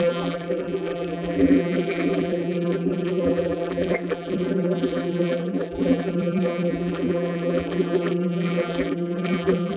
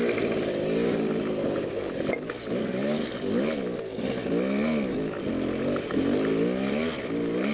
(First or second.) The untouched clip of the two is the second